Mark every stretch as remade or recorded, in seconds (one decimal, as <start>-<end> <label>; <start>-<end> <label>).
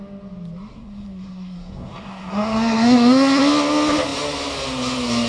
0.0-0.7 recorded; 0.7-3.4 remade; 3.4-5.3 recorded